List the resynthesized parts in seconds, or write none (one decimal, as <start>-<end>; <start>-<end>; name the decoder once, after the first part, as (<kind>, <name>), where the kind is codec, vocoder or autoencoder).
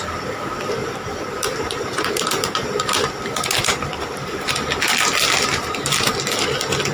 0.8-4.5 (vocoder, BigVGAN v2)